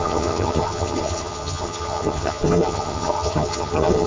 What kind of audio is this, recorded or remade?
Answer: remade